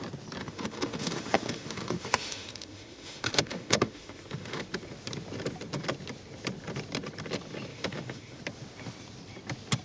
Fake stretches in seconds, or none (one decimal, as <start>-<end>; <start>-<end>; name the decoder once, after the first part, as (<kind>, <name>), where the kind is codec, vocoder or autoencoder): 0.4-4.7 (autoencoder, DAC-VAE); 7.7-8.4

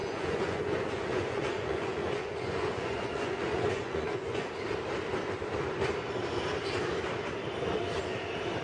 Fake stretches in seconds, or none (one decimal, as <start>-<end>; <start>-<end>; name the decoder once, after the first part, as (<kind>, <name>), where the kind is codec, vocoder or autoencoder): 0.0-4.5 (vocoder, Vocos)